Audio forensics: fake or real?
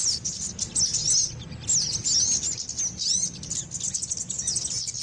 real